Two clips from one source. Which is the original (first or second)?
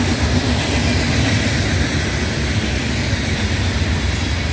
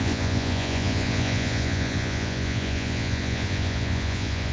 first